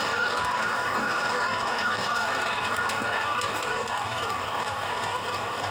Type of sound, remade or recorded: remade